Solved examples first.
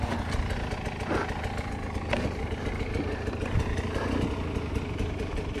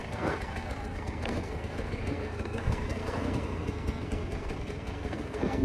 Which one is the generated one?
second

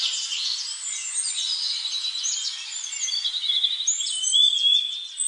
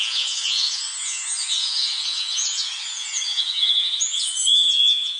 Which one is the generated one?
second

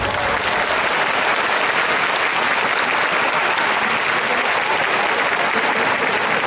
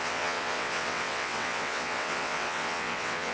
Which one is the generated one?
second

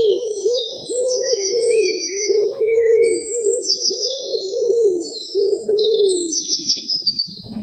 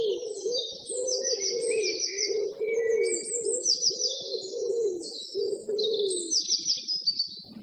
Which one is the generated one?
first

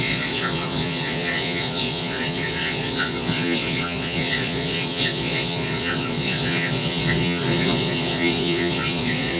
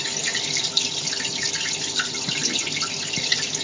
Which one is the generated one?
first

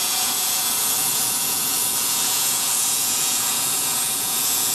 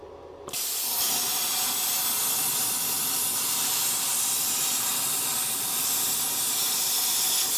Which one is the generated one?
first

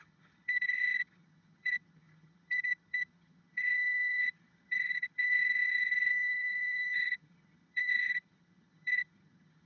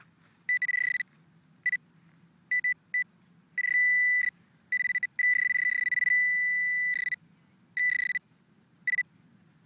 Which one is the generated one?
first